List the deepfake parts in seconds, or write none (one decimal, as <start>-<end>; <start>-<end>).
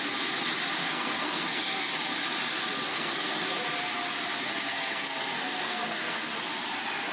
0.8-1.9; 2.9-3.4; 4.7-6.3